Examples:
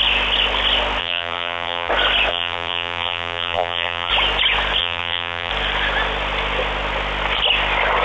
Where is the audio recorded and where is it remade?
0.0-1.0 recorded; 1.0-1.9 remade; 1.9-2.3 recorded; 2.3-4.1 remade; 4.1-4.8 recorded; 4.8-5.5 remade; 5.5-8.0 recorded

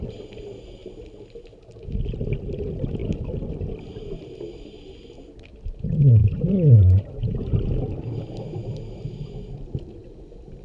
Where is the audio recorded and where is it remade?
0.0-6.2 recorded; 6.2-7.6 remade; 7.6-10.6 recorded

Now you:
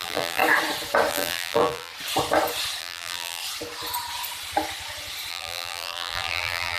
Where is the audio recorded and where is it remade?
0.0-0.4 remade; 0.4-1.1 recorded; 1.1-1.9 remade; 1.9-2.8 recorded; 2.8-3.4 remade; 3.4-5.3 recorded; 5.3-6.8 remade

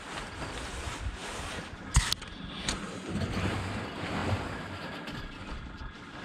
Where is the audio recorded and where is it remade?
0.0-6.2 recorded

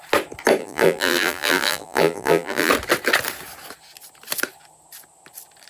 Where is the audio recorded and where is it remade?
0.0-0.6 recorded; 0.6-2.7 remade; 2.7-5.7 recorded

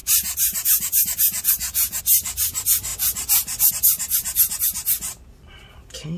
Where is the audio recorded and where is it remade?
0.0-2.0 remade; 2.0-6.2 recorded

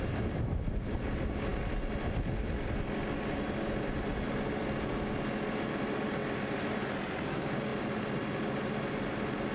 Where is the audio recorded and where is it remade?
0.0-9.5 recorded